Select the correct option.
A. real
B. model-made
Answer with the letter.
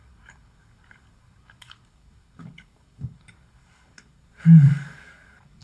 B